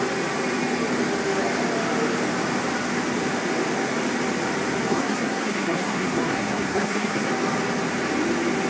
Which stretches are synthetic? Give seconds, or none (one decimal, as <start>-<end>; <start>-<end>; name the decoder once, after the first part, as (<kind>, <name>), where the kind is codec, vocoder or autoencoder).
4.9-7.3 (codec, SNAC)